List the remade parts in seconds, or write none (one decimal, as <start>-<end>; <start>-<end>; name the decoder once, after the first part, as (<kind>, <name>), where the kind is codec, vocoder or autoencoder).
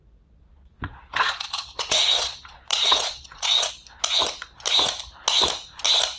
0.0-3.7 (vocoder, Vocos)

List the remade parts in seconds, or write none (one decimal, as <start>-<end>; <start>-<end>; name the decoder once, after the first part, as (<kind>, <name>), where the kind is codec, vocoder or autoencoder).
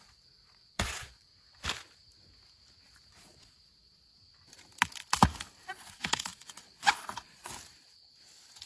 0.0-1.3 (vocoder, Vocos); 3.1-4.2; 5.7-7.5